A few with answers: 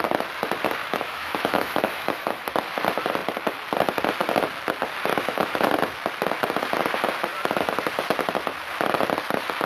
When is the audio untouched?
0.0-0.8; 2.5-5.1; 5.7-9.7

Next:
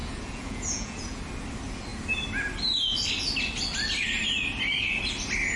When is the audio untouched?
1.2-5.6